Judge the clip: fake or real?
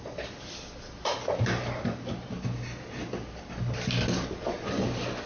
real